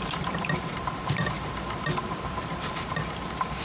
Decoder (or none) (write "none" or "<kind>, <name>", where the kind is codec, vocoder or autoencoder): vocoder, BigVGAN v2